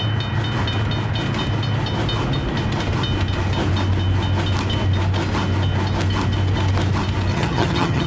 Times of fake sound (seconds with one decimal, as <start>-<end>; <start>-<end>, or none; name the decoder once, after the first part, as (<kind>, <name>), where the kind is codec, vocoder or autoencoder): 7.3-8.1 (vocoder, HiFi-GAN)